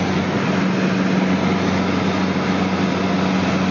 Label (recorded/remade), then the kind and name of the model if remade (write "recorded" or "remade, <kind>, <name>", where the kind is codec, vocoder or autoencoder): recorded